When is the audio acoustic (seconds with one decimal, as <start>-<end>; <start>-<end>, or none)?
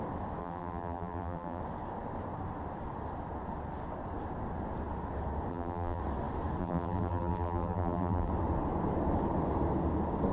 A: 0.0-0.4; 1.6-5.5; 6.0-6.6; 8.3-10.3